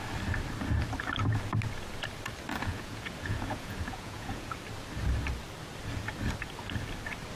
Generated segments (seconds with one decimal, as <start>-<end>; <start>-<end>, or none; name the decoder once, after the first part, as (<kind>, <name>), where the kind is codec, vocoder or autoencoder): 2.6-4.6 (vocoder, Vocos)